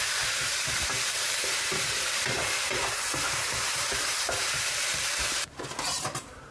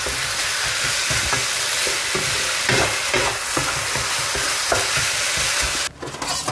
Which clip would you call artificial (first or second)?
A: first